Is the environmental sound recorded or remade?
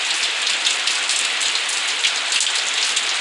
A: recorded